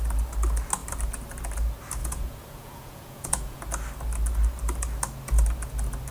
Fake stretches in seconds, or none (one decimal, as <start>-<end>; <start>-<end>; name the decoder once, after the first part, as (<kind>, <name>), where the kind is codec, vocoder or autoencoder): 2.0-3.6 (vocoder, Vocos)